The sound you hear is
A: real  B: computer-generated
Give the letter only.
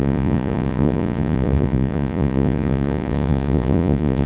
B